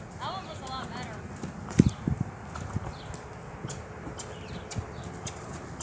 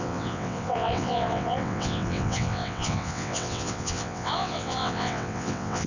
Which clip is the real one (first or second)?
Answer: first